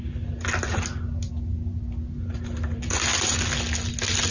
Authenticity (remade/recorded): recorded